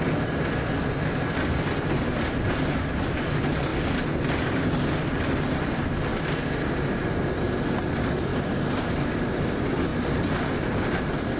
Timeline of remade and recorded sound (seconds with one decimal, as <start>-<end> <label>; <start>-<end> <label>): 0.0-11.4 recorded